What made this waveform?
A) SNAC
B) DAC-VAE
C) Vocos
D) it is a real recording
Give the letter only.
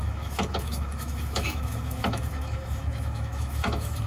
B